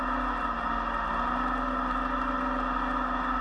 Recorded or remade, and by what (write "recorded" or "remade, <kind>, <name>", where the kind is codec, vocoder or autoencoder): recorded